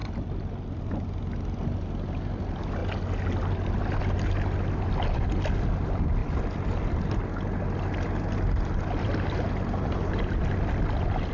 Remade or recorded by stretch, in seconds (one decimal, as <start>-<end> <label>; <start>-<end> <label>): 0.0-11.3 recorded